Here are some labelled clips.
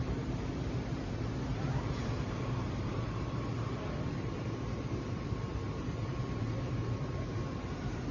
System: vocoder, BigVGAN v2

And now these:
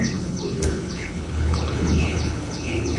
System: codec, HILCodec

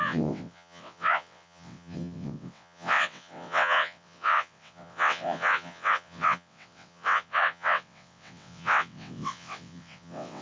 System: vocoder, WaveNeXt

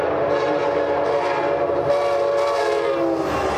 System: none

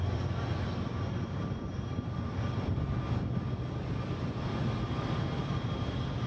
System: none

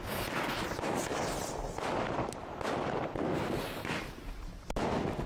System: none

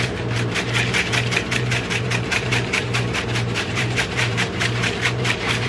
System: vocoder, BigVGAN v2